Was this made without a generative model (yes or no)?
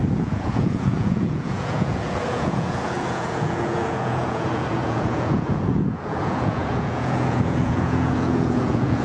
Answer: no